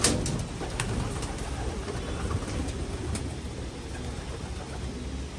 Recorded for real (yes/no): yes